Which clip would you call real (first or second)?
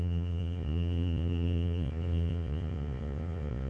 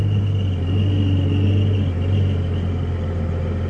second